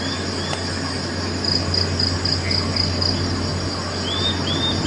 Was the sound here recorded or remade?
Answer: recorded